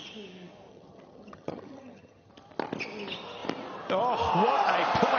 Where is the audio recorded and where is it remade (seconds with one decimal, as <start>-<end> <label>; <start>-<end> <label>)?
0.0-0.7 recorded; 0.7-2.3 remade; 2.3-5.2 recorded